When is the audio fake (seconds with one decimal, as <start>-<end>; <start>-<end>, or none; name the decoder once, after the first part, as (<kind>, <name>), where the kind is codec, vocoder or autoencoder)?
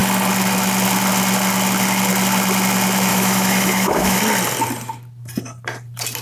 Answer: 3.1-4.2 (autoencoder, DAC-VAE)